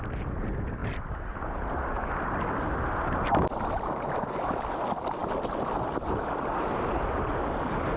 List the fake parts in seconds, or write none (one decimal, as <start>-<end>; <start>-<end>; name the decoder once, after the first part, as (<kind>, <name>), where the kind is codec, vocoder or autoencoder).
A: none

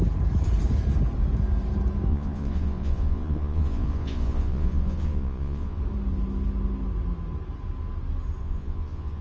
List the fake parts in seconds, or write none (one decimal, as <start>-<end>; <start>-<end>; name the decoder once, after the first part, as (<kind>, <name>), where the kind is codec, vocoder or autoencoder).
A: 2.1-5.8 (vocoder, Vocos); 8.4-9.2

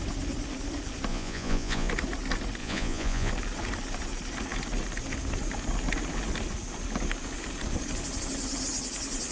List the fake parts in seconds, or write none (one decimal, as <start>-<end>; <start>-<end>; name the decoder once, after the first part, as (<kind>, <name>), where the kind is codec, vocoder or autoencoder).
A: 1.1-1.9 (vocoder, Vocos); 2.6-3.3

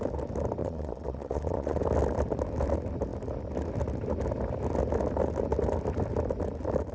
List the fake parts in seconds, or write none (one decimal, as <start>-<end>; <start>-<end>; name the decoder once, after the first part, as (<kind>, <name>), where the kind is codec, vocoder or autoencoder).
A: 0.6-1.8 (vocoder, Vocos)